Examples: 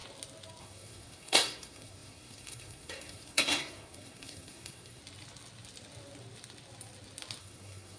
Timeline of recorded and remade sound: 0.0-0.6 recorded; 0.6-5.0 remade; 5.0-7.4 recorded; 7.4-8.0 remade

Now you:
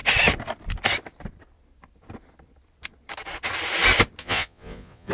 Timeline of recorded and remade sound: 0.0-4.2 recorded; 4.2-5.1 remade

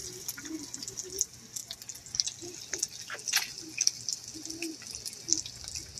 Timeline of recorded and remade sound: 0.0-1.0 remade; 1.0-6.0 recorded